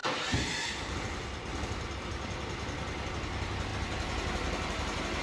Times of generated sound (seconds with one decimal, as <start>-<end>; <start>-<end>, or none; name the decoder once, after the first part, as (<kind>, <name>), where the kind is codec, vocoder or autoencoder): none

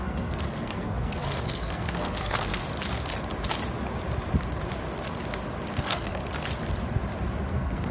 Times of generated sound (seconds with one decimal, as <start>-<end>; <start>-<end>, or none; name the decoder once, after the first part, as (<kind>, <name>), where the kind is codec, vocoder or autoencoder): 0.0-2.6 (codec, SNAC); 5.8-6.2; 7.5-7.9

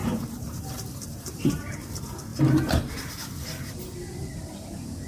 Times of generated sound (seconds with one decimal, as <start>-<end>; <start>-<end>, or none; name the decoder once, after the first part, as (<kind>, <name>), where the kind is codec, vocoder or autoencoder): 0.0-1.9 (vocoder, BigVGAN v2); 2.3-3.1

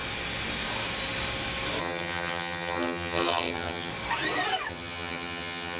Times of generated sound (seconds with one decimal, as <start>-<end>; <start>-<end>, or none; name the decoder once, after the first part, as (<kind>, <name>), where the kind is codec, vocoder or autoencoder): 1.8-3.9 (vocoder, HiFi-GAN); 4.7-5.8

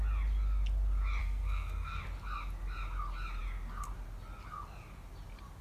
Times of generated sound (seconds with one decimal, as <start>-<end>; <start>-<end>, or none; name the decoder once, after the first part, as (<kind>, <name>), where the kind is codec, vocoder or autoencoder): 1.2-2.0 (codec, SNAC)

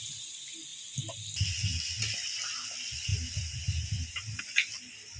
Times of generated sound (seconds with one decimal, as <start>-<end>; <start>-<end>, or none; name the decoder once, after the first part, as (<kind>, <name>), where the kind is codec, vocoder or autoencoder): none